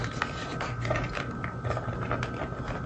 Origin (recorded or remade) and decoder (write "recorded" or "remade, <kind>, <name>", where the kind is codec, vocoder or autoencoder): recorded